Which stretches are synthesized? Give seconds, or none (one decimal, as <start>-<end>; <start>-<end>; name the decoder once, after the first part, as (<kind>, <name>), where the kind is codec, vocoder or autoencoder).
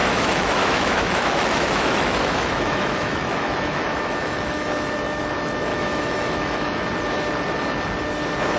0.0-4.7 (autoencoder, DAC-VAE); 5.7-6.8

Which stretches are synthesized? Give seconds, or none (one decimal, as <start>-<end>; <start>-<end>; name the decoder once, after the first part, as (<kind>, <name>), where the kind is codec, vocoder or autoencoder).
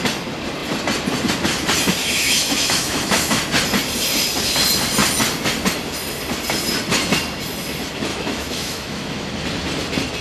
2.0-3.4 (autoencoder, DAC-VAE); 8.1-9.3